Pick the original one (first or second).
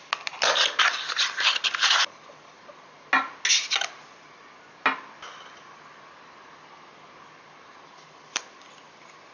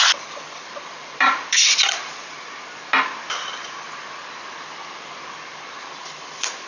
first